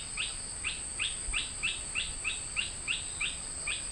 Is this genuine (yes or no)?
yes